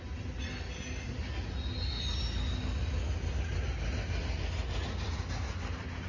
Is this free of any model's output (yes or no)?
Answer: yes